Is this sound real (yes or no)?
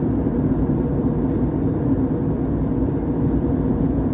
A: yes